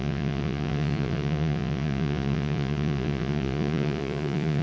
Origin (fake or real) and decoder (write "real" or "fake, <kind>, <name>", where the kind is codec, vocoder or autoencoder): fake, vocoder, Vocos